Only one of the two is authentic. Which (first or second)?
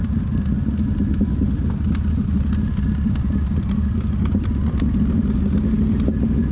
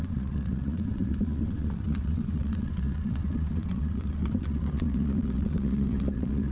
first